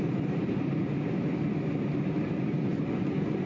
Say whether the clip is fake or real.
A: real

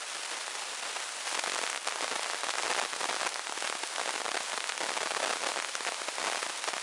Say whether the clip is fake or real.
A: real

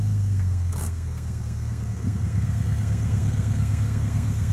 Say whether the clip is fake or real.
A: fake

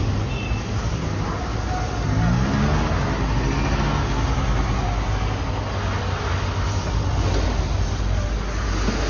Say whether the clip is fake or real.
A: real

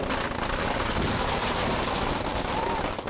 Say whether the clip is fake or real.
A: real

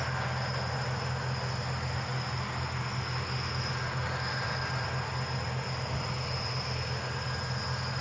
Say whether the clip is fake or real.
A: real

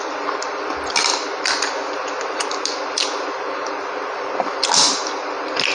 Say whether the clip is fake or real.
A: real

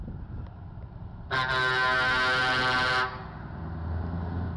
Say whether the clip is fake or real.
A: real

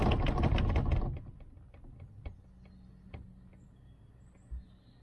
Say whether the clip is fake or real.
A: real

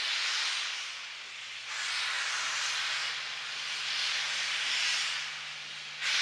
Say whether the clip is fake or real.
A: real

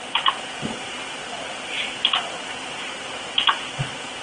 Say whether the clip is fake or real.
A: real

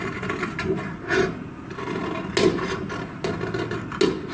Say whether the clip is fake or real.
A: real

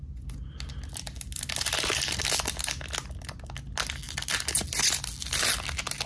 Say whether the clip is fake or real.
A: real